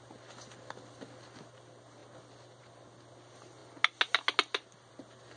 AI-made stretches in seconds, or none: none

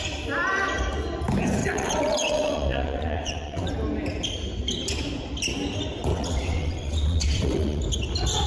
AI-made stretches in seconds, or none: 1.6-3.7; 6.1-7.8

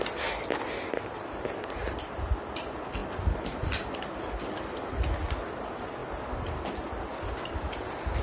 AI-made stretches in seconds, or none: none